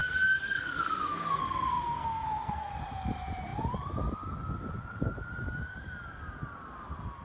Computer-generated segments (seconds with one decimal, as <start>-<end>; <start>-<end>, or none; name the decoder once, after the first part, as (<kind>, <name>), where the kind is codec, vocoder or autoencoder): 0.0-2.7 (codec, SNAC)